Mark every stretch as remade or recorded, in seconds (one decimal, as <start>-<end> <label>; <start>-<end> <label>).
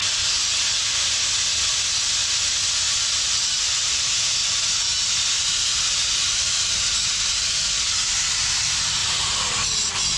0.0-10.2 recorded